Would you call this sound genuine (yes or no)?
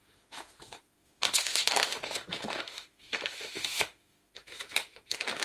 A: no